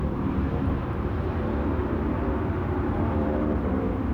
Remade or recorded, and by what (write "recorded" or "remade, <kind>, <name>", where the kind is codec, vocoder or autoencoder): remade, vocoder, BigVGAN v2